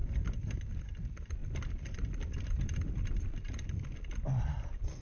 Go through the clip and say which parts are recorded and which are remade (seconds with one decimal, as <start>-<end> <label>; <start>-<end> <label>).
0.0-5.0 recorded